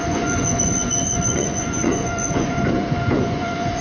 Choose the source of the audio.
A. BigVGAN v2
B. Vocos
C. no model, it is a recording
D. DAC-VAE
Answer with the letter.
B